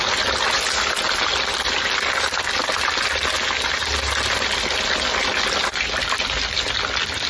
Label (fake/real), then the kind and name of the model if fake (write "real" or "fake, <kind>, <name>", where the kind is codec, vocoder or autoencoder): real